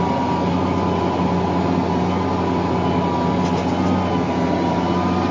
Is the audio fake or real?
real